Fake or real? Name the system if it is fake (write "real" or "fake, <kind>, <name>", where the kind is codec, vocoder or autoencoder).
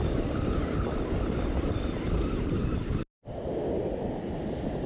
real